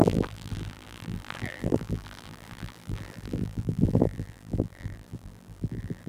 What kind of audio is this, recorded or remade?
remade